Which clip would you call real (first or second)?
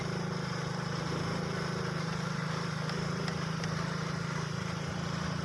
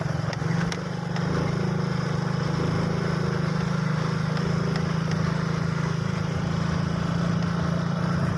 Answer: second